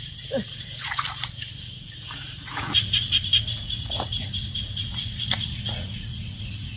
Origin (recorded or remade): remade